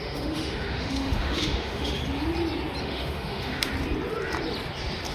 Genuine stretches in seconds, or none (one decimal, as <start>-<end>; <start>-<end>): 2.0-2.8; 3.7-5.1